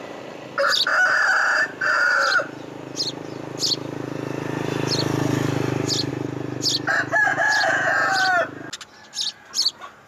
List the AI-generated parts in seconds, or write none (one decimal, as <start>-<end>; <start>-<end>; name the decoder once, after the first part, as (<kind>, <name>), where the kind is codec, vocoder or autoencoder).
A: 7.3-8.3 (vocoder, Vocos)

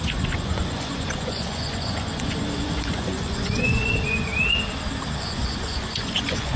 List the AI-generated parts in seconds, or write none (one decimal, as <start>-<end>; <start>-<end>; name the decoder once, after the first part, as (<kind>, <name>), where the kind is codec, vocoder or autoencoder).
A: 0.0-4.3 (vocoder, Vocos); 5.2-6.6

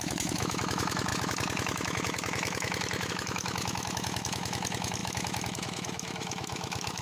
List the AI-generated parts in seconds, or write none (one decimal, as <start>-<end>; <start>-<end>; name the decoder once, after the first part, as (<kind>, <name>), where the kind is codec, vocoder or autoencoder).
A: 0.0-7.0 (autoencoder, DAC-VAE)

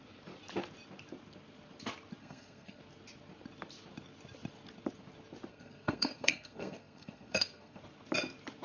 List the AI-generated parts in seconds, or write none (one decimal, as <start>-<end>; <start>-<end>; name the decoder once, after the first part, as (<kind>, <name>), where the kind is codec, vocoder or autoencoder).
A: 2.2-2.8 (codec, SNAC); 5.5-7.8